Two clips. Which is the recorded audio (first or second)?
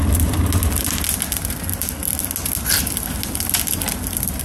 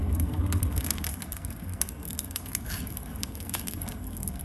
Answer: first